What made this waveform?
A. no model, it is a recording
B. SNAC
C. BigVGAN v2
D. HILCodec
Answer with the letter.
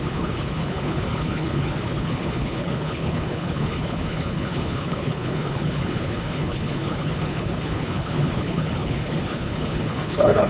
D